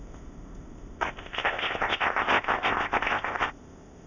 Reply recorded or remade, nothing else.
remade